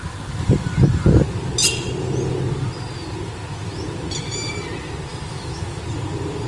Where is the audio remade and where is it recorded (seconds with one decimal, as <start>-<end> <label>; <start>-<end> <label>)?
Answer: 0.0-5.1 recorded; 5.1-5.8 remade; 5.8-6.5 recorded